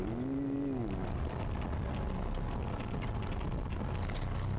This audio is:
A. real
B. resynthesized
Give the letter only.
A